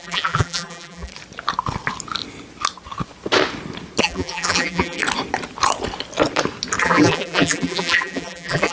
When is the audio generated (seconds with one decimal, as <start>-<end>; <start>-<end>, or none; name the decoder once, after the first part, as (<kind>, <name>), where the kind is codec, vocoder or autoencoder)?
0.0-1.1 (vocoder, BigVGAN v2); 4.0-5.0; 6.8-8.7